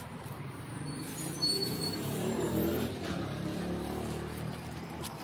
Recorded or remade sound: remade